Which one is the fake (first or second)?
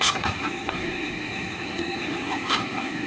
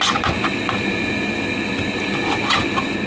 first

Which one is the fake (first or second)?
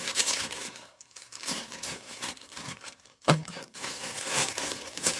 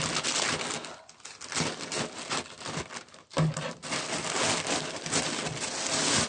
first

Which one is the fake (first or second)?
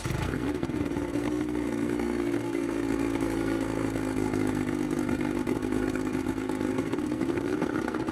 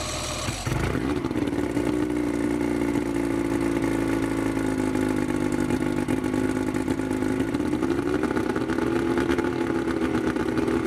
first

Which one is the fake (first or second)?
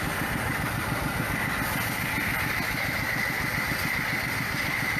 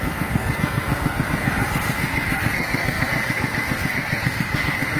second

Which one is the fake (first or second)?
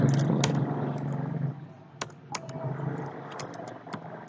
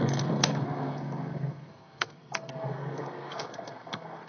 second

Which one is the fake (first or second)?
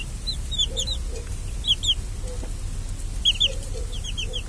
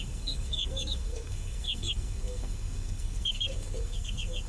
second